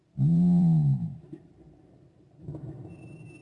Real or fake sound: fake